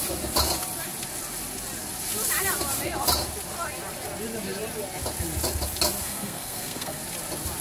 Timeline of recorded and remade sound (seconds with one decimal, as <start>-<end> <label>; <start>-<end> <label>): 0.0-6.0 recorded; 6.0-7.0 remade; 7.0-7.6 recorded

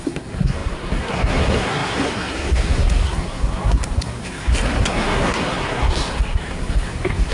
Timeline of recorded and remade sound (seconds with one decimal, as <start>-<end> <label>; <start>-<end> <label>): 0.0-7.3 remade